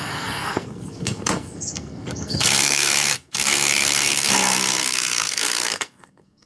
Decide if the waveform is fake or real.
fake